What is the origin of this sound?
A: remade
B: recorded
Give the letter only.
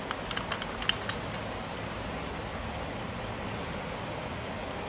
B